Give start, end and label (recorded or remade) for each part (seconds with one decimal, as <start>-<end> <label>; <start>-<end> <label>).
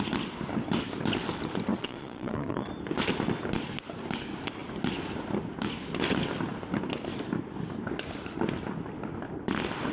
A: 0.0-1.7 recorded; 1.7-2.7 remade; 2.7-9.9 recorded